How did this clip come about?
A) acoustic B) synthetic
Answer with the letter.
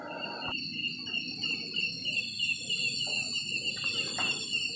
A